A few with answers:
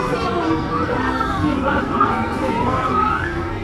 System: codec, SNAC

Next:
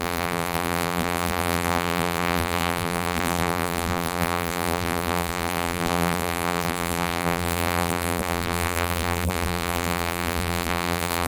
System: vocoder, BigVGAN v2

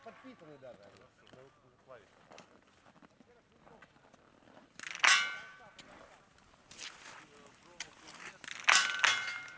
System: none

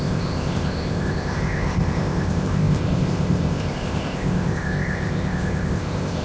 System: codec, ZipCodec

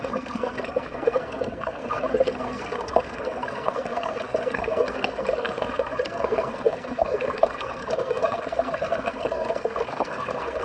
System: codec, SNAC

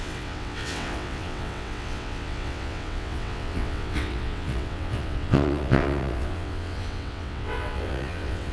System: vocoder, WaveNeXt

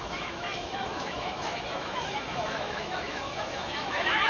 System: autoencoder, DAC-VAE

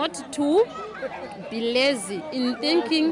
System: none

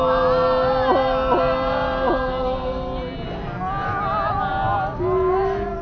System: none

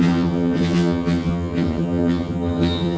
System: vocoder, HiFi-GAN